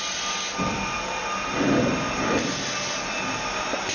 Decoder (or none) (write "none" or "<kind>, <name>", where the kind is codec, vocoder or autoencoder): none